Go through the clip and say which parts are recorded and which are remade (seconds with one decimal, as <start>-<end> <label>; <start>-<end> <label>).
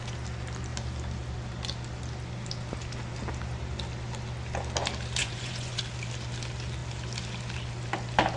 0.0-5.2 recorded; 5.2-5.8 remade; 5.8-8.4 recorded